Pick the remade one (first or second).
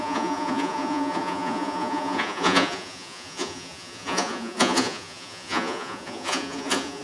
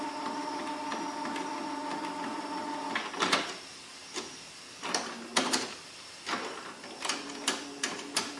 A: first